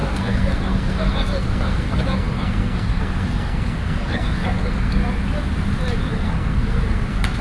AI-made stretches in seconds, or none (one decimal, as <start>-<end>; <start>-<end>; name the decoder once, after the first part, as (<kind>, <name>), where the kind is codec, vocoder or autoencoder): 0.0-5.0 (codec, SNAC); 6.1-7.4